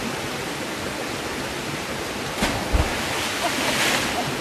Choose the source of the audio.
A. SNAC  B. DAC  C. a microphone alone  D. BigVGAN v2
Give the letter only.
C